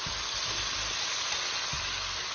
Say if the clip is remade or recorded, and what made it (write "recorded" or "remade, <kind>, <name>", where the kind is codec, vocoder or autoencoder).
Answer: recorded